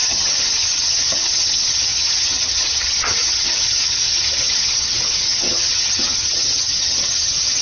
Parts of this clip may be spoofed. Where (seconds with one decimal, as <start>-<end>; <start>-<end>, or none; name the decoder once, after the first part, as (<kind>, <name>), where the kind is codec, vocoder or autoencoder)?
0.0-7.6 (vocoder, HiFi-GAN)